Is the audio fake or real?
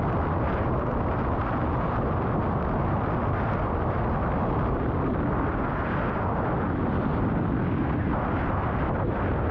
real